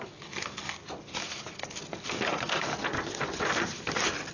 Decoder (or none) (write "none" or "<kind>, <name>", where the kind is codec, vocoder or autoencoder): none